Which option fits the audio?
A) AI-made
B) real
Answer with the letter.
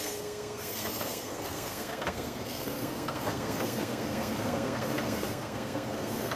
A